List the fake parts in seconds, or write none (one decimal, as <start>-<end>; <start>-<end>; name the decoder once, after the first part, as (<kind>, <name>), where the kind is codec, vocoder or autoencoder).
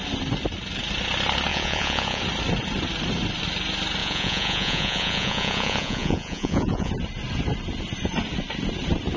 1.5-2.2 (vocoder, Vocos); 4.0-6.9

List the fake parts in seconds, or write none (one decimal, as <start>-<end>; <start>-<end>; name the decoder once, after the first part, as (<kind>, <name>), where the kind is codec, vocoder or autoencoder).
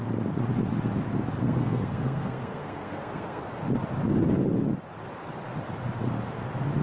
1.4-3.4 (codec, SNAC)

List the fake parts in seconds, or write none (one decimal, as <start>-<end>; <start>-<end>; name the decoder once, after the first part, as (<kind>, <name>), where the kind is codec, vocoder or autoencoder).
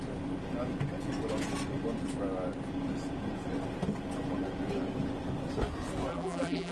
6.1-6.7 (vocoder, BigVGAN v2)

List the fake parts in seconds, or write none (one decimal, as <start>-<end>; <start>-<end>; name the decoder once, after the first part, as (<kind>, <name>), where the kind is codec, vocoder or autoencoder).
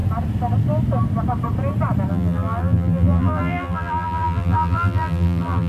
2.1-5.7 (vocoder, BigVGAN v2)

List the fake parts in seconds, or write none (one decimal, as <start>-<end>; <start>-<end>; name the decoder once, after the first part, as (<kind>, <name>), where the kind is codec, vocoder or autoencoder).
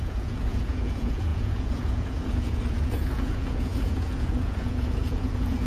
0.0-5.7 (vocoder, Vocos)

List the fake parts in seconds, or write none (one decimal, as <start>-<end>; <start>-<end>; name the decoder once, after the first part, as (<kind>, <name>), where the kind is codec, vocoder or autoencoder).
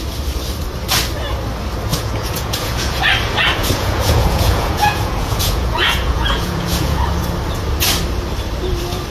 1.9-3.0 (vocoder, Vocos); 3.6-7.0